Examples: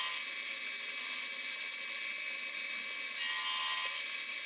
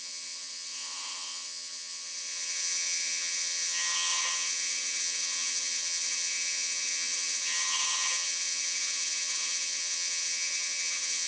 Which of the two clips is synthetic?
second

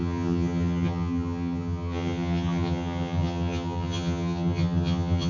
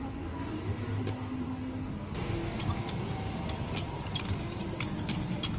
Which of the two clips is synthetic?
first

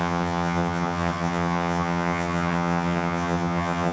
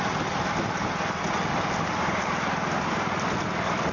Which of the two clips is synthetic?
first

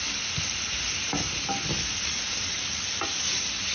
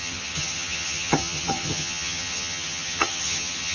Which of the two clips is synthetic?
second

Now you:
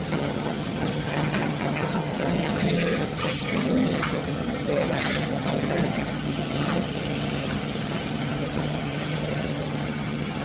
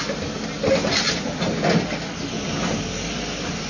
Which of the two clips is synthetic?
first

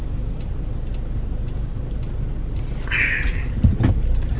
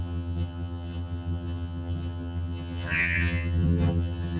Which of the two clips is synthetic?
second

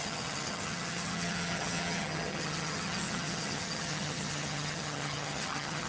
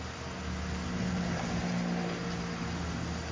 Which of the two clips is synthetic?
first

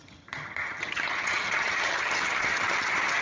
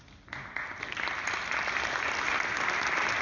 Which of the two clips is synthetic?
first